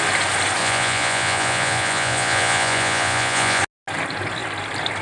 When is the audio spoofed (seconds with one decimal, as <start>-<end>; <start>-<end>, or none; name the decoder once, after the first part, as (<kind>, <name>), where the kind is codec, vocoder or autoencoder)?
0.6-3.6 (vocoder, Vocos)